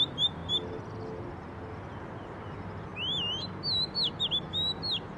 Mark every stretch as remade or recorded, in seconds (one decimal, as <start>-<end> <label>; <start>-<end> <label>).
0.0-5.2 recorded